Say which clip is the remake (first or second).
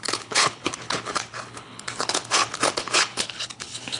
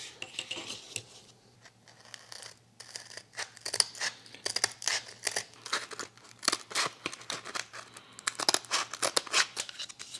first